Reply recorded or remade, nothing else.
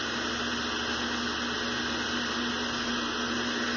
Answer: recorded